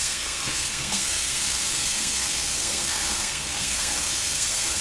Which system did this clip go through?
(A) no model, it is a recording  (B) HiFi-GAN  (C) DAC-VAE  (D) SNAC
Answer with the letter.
D